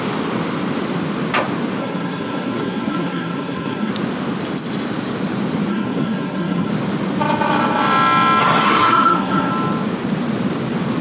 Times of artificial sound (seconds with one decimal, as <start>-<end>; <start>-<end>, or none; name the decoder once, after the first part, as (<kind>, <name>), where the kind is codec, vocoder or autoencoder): 1.8-3.9 (codec, SNAC); 5.7-6.7; 8.4-9.5